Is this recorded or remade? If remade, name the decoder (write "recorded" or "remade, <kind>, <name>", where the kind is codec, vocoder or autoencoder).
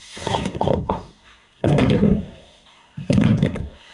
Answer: remade, codec, SNAC